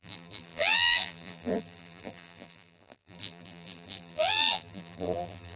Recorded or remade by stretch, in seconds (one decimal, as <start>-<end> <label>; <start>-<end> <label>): 0.0-5.6 remade